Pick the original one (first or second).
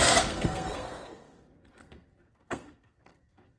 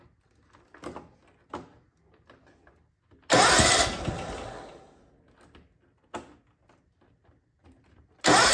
second